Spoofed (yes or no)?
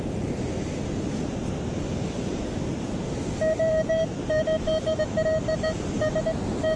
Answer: no